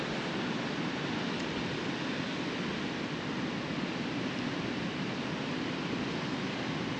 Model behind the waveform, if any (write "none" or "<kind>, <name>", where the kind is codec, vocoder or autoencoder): none